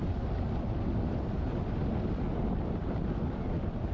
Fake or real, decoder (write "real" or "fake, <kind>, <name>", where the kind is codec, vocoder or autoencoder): real